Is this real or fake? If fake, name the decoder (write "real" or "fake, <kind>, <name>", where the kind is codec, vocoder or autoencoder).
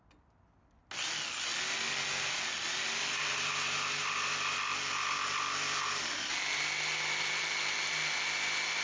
real